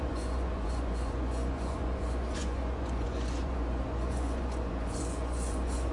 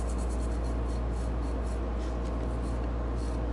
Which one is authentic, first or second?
second